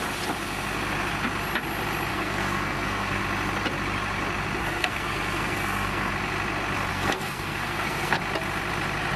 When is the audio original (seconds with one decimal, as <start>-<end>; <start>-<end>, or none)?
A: 0.0-2.1; 3.2-4.6; 6.1-6.9; 8.2-9.2

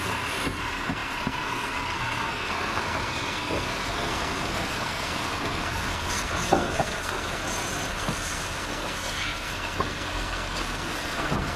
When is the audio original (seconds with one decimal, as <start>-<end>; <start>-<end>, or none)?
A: 7.4-7.9

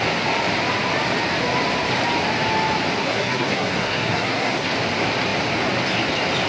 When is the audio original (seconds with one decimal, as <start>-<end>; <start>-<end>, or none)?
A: 0.0-3.0; 4.7-6.5

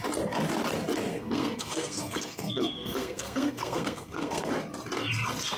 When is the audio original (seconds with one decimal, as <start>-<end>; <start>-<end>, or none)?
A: 0.0-1.1; 4.5-5.6

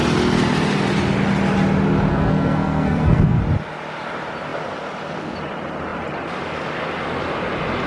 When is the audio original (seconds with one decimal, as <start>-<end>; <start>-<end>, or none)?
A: 0.0-2.1; 3.4-7.9

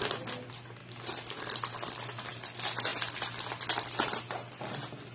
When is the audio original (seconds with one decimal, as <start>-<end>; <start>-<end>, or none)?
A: 0.0-5.1

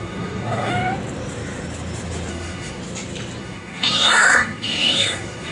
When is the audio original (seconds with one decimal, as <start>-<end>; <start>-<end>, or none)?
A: 0.7-2.3; 2.8-3.4

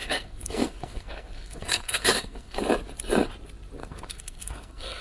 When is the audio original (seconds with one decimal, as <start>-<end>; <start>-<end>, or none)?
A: 2.6-3.8